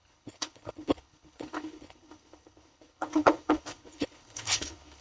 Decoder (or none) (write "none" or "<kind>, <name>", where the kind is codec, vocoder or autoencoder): codec, HILCodec